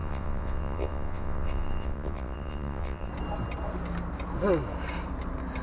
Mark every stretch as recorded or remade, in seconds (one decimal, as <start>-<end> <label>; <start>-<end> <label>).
0.0-3.1 remade; 3.1-5.6 recorded